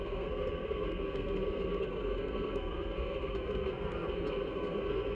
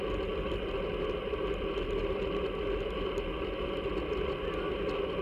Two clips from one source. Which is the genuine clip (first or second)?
second